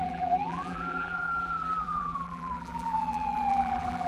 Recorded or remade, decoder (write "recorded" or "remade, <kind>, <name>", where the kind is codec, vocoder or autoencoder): remade, vocoder, BigVGAN v2